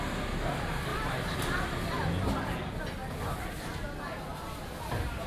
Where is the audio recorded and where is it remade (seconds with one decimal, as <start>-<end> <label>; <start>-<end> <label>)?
0.0-5.3 recorded